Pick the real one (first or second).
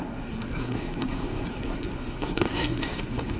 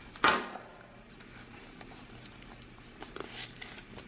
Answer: second